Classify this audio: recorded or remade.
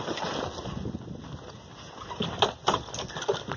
recorded